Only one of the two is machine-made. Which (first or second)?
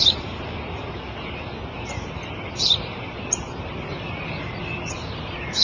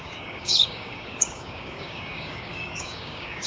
second